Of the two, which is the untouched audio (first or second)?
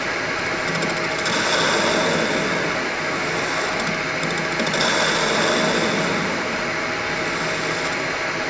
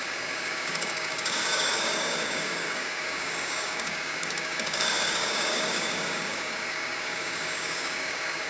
first